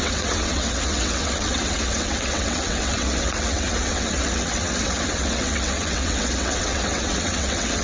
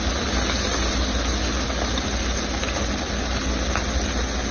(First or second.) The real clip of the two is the second